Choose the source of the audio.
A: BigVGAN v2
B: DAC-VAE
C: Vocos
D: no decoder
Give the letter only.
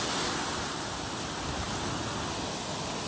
D